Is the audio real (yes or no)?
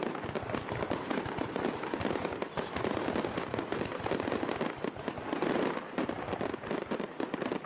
yes